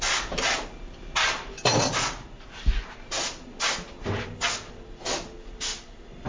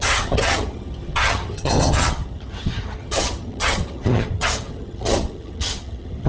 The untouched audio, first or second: first